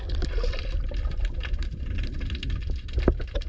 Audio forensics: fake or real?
fake